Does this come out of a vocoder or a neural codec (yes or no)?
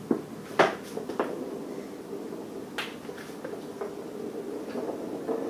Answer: no